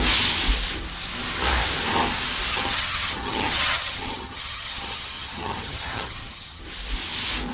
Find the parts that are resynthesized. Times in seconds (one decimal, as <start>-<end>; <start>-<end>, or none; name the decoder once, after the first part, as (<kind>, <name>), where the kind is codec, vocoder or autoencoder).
2.5-6.6 (vocoder, HiFi-GAN)